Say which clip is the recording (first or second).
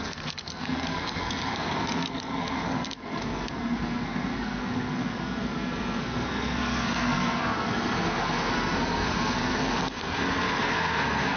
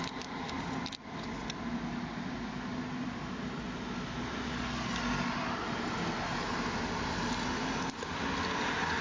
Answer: second